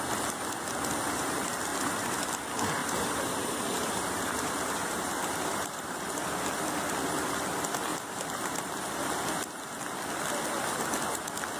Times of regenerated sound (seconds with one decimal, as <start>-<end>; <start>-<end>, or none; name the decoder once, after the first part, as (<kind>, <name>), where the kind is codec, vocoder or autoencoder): 1.7-2.3 (vocoder, BigVGAN v2); 2.8-6.0; 7.9-8.6

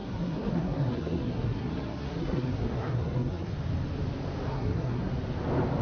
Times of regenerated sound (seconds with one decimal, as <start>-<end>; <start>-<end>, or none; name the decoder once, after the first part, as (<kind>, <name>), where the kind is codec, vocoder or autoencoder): 0.0-3.5 (codec, SNAC); 4.5-5.1

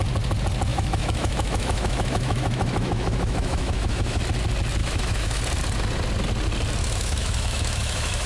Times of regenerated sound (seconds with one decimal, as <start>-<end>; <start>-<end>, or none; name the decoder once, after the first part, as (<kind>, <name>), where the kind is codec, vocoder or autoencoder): 0.7-4.2 (autoencoder, DAC-VAE); 4.8-5.4; 6.8-8.3

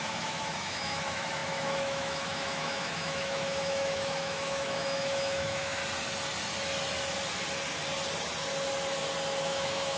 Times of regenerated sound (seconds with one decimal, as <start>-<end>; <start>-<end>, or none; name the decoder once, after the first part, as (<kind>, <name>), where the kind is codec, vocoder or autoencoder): 0.0-5.8 (autoencoder, DAC-VAE); 9.4-10.0

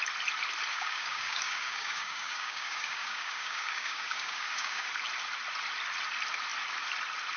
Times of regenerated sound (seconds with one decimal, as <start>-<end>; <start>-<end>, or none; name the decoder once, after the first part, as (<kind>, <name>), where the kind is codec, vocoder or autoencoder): 0.7-4.9 (codec, DAC)